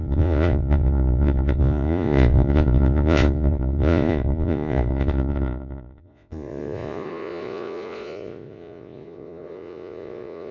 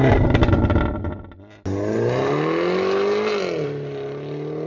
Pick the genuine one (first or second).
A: second